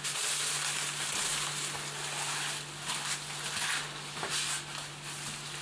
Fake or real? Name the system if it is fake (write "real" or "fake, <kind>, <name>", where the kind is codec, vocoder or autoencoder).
real